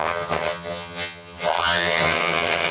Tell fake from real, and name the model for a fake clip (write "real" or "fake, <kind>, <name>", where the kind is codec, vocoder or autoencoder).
fake, vocoder, HiFi-GAN